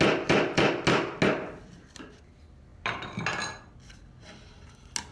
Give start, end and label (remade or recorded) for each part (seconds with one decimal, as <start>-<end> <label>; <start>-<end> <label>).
0.0-5.1 recorded